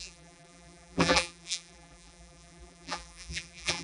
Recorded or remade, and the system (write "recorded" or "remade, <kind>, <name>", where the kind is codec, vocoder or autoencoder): remade, vocoder, BigVGAN v2